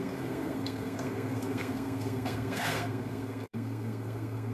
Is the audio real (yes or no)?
no